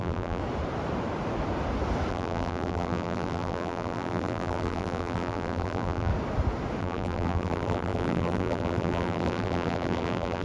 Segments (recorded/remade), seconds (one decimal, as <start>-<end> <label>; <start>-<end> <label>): 0.0-0.4 remade; 0.4-2.1 recorded; 2.1-6.1 remade; 6.1-6.8 recorded; 6.8-10.4 remade